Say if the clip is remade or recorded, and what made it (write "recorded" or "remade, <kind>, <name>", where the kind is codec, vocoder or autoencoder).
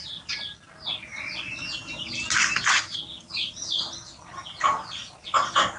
recorded